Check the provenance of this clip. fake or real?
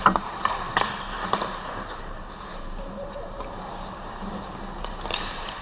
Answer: fake